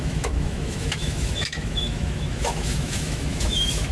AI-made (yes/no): yes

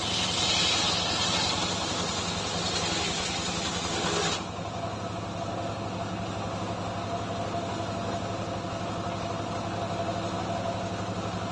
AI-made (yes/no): no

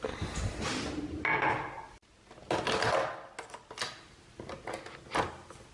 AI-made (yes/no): no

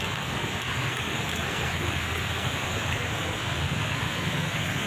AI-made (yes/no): yes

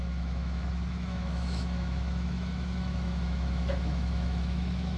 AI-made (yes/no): yes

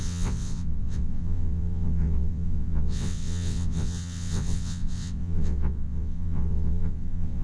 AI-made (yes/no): yes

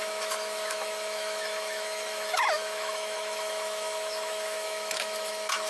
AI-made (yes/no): yes